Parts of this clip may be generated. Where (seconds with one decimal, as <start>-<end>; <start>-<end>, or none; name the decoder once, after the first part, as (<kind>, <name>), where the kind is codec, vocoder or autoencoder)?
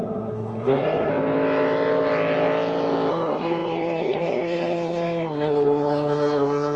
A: 0.0-1.1 (codec, SNAC); 3.1-6.8